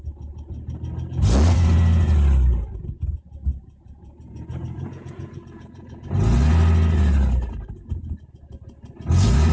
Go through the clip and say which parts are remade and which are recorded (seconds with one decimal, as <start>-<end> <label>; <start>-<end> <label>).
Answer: 0.0-3.5 recorded; 3.5-6.1 remade; 6.1-9.5 recorded